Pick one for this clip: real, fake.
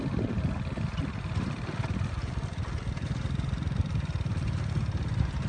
real